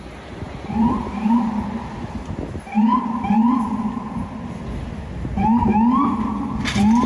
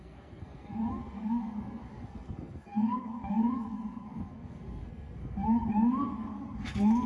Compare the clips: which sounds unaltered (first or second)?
first